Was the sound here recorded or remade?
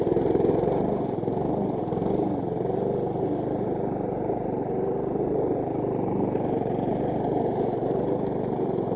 remade